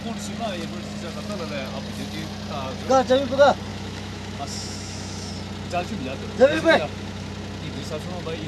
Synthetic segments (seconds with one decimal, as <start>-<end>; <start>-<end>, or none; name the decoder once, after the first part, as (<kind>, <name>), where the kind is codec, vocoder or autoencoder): 3.7-5.3 (autoencoder, DAC-VAE); 6.5-7.3